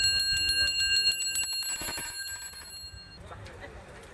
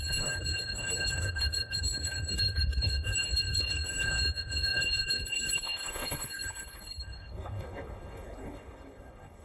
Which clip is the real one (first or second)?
first